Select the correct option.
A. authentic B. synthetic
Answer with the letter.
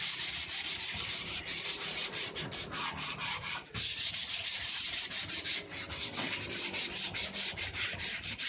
B